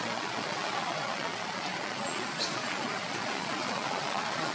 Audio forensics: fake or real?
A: fake